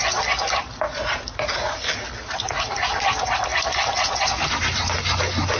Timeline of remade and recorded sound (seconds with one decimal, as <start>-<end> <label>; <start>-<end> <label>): 0.0-5.6 recorded

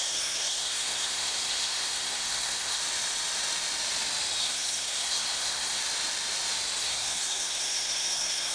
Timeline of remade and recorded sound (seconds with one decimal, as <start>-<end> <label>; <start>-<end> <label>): 0.0-2.8 remade; 2.8-4.4 recorded; 4.4-5.8 remade; 5.8-6.8 recorded; 6.8-8.5 remade

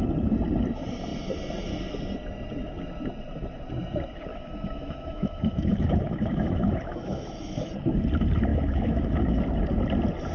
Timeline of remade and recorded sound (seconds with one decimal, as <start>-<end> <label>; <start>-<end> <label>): 0.0-4.3 recorded; 4.3-7.7 remade; 7.7-8.5 recorded; 8.5-9.4 remade; 9.4-10.3 recorded

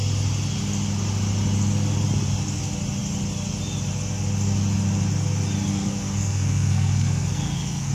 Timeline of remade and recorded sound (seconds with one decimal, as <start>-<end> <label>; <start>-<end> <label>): 0.0-5.7 recorded; 5.7-7.9 remade

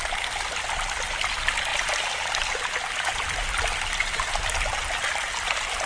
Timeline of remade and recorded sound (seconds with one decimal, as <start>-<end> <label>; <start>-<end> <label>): 0.0-5.9 recorded